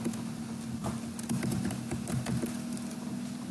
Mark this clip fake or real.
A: real